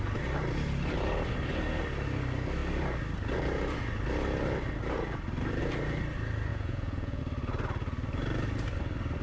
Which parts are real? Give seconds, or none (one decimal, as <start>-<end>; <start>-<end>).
0.0-6.5; 7.2-9.2